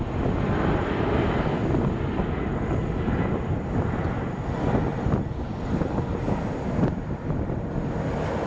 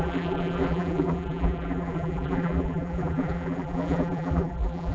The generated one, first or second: second